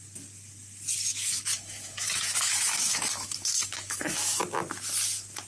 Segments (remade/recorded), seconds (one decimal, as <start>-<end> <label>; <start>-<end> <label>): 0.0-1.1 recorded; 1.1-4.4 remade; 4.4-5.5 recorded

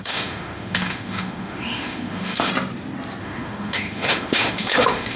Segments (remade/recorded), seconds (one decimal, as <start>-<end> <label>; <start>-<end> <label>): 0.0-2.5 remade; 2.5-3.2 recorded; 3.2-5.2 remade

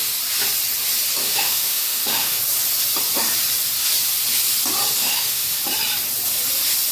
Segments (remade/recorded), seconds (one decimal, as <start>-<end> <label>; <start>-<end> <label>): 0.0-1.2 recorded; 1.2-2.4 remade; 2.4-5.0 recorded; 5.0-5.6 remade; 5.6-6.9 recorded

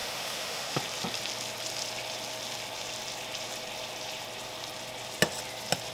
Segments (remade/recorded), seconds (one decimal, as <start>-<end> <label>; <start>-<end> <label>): 0.0-0.8 remade; 0.8-5.9 recorded

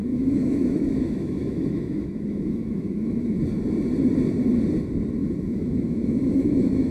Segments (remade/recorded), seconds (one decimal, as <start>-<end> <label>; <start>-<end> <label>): 0.0-3.4 remade; 3.4-5.2 recorded; 5.2-6.9 remade

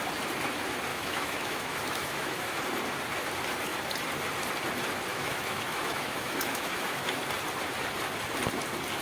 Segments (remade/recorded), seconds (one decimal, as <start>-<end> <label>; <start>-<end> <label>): 0.0-0.9 recorded; 0.9-2.6 remade; 2.6-5.1 recorded; 5.1-7.2 remade; 7.2-9.0 recorded